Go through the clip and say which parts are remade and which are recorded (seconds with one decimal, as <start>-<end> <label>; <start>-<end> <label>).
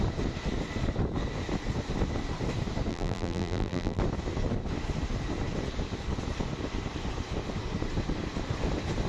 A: 0.0-2.9 recorded; 2.9-4.0 remade; 4.0-9.1 recorded